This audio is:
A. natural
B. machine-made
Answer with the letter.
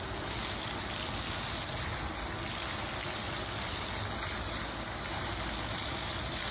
A